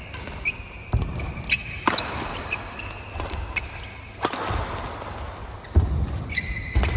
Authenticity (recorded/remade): recorded